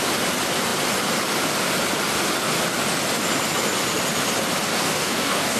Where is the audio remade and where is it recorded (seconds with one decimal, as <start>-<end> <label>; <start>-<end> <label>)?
0.0-4.7 recorded; 4.7-5.6 remade